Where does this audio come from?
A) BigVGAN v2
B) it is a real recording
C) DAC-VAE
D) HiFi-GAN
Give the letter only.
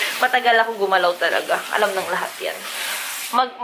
A